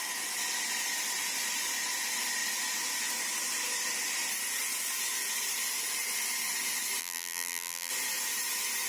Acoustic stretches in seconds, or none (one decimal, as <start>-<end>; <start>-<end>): 0.0-7.0; 7.9-8.9